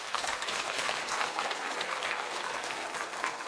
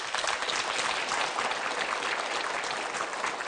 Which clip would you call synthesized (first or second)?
first